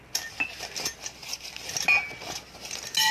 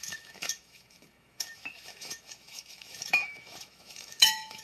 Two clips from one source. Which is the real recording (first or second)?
first